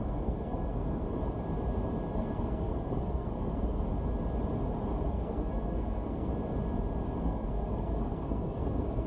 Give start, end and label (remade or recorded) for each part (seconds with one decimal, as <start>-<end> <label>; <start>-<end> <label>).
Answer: 0.0-1.2 remade; 1.2-2.1 recorded; 2.1-3.9 remade; 3.9-5.1 recorded; 5.1-6.3 remade; 6.3-7.2 recorded; 7.2-9.1 remade